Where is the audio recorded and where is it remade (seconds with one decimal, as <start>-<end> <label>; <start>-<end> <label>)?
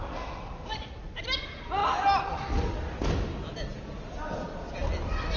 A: 0.0-5.4 recorded